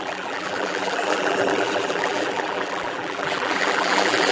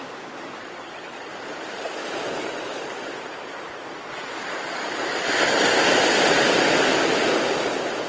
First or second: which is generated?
first